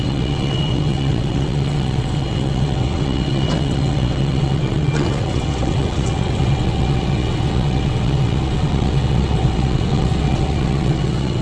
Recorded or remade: remade